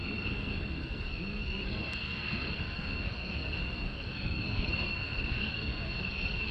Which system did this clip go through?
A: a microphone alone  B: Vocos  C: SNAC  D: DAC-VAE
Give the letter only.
C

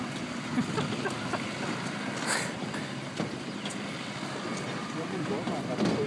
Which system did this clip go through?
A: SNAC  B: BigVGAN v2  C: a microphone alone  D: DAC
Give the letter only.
C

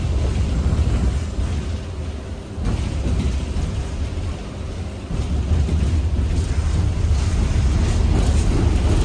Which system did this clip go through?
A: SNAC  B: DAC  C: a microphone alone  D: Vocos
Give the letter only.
C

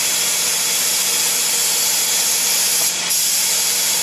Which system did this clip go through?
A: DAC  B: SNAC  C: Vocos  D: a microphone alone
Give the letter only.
D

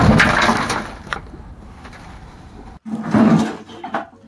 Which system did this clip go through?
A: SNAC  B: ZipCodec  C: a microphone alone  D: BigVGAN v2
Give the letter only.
C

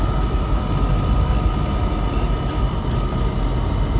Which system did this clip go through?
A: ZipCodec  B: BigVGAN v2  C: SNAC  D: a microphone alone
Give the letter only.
D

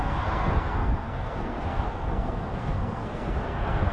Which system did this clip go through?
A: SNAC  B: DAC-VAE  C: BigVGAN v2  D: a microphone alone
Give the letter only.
A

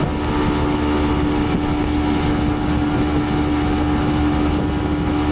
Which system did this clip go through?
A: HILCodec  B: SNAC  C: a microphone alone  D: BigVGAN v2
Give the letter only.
C